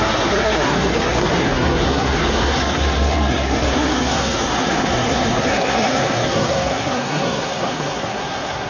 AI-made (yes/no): yes